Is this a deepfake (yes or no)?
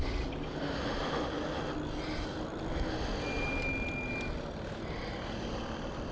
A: no